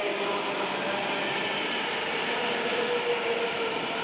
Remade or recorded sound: remade